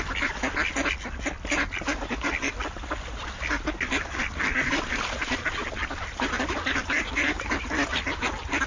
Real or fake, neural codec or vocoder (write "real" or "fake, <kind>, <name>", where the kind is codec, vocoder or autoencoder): real